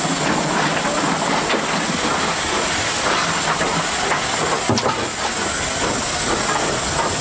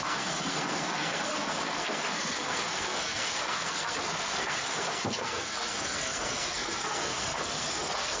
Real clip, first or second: first